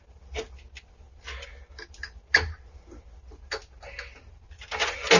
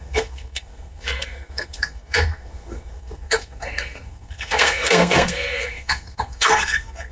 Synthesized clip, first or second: second